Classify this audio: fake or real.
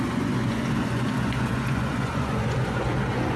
fake